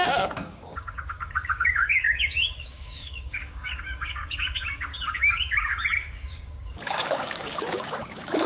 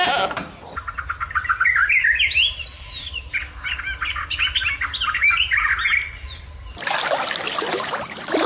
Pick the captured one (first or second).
second